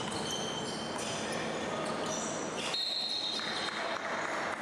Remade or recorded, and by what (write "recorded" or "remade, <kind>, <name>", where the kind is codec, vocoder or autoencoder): recorded